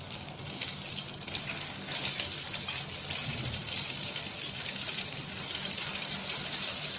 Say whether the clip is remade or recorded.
recorded